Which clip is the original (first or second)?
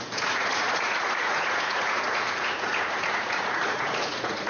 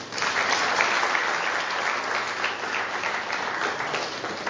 second